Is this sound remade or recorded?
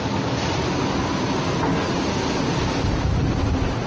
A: recorded